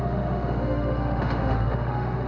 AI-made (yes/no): yes